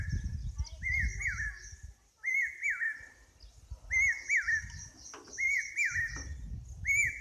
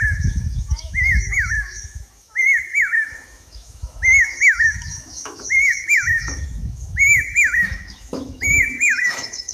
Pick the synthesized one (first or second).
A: second